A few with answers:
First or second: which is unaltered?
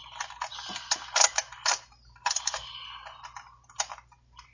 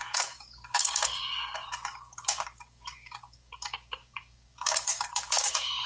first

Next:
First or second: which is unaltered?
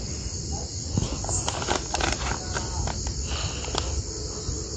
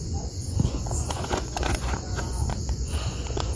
first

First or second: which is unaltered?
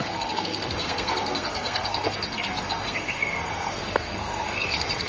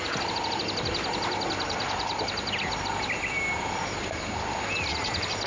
second